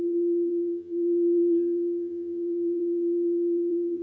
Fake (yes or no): yes